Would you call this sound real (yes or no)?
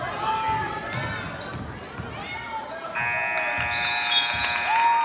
yes